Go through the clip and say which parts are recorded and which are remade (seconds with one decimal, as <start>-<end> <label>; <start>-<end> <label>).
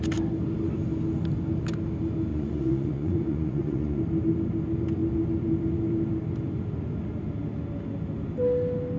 0.0-2.3 recorded; 2.3-4.0 remade; 4.0-9.0 recorded